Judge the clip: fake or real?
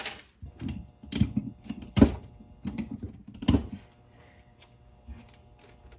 real